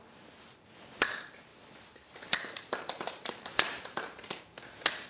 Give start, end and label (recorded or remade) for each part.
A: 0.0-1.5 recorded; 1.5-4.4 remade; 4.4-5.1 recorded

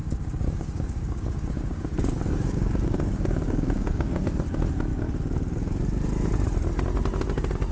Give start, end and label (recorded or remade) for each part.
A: 0.0-4.2 remade; 4.2-7.7 recorded

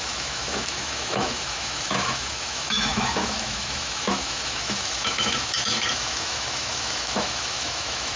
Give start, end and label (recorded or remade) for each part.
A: 0.0-8.2 remade

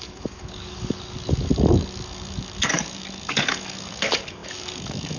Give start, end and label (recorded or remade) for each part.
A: 0.0-5.2 remade

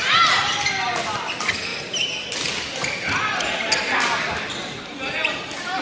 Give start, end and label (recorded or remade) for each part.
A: 0.0-5.8 recorded

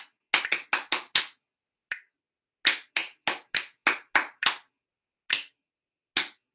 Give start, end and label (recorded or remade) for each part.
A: 0.0-6.5 recorded